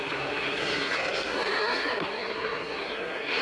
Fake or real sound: fake